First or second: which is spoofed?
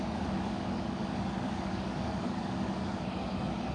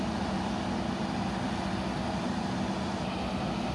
first